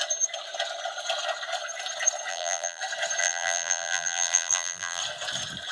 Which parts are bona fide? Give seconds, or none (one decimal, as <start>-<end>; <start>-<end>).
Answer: 0.0-2.3; 2.8-3.2; 5.0-5.7